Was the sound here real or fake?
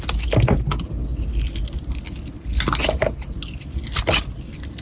real